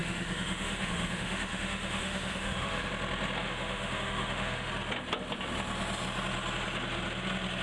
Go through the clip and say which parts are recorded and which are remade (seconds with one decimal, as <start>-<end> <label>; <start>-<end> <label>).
0.0-2.9 remade; 2.9-3.4 recorded; 3.4-4.7 remade; 4.7-7.6 recorded

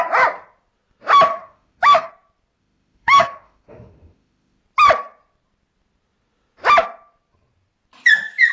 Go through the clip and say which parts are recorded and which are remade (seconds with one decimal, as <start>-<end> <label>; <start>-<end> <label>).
0.0-1.3 recorded; 1.3-2.1 remade; 2.1-2.6 recorded; 2.6-4.6 remade; 4.6-8.5 recorded

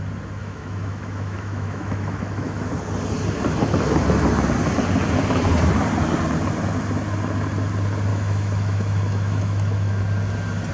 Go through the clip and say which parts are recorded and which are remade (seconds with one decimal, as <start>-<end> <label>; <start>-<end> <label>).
0.0-0.4 recorded; 0.4-2.7 remade; 2.7-8.1 recorded; 8.1-10.0 remade; 10.0-10.7 recorded

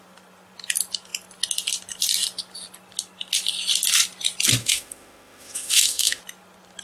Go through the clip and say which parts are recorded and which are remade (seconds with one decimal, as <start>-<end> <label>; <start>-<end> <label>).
0.0-4.6 recorded; 4.6-6.2 remade; 6.2-6.8 recorded

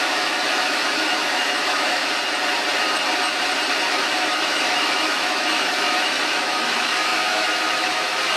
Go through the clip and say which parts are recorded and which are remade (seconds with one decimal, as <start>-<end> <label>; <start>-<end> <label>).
0.0-2.0 remade; 2.0-3.9 recorded; 3.9-8.4 remade

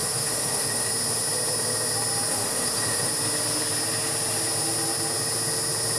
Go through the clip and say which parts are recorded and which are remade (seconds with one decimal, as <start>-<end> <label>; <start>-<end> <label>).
0.0-0.9 remade; 0.9-2.3 recorded; 2.3-3.1 remade; 3.1-6.0 recorded